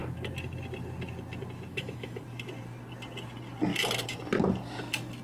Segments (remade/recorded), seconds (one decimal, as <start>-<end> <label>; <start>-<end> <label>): 0.0-1.7 recorded; 1.7-2.2 remade; 2.2-5.2 recorded